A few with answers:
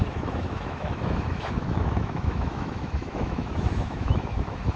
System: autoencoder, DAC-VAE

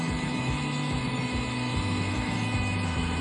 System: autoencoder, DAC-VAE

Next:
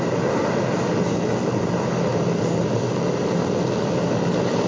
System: none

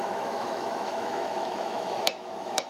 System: autoencoder, DAC-VAE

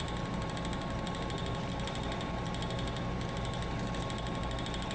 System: none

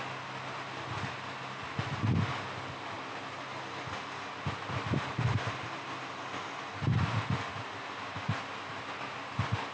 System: none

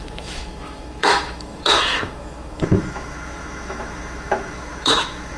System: autoencoder, DAC-VAE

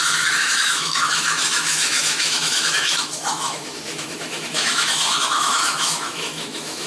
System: autoencoder, DAC-VAE